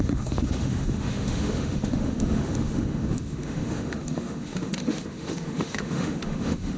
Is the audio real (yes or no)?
no